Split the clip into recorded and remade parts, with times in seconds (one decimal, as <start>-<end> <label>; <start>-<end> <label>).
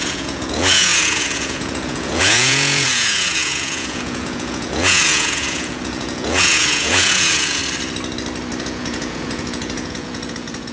0.0-7.6 remade; 7.6-8.6 recorded; 8.6-10.7 remade